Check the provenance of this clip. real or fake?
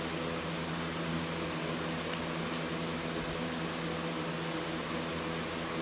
real